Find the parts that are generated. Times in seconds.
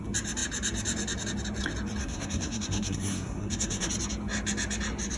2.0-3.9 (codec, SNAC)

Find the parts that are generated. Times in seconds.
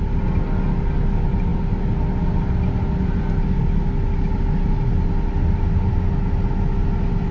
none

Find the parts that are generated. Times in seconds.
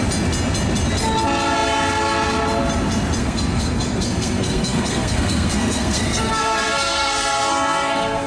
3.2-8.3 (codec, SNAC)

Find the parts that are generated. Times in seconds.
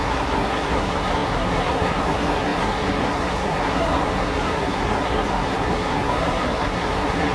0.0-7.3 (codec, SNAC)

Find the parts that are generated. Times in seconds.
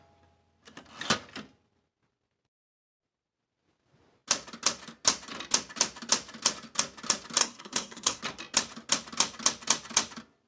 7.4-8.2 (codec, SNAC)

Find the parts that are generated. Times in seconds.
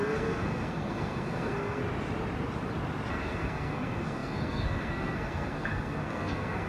0.0-1.8 (codec, SNAC); 3.1-6.7